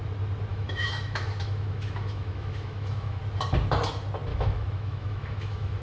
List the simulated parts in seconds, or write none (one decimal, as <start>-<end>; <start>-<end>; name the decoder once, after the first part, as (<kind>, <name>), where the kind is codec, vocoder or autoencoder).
0.5-3.2 (autoencoder, DAC-VAE); 4.3-5.8